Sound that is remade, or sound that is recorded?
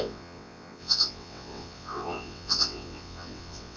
remade